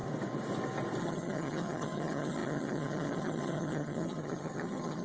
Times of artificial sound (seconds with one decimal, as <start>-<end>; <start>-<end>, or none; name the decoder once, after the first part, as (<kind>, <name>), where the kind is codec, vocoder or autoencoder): 1.0-5.0 (vocoder, HiFi-GAN)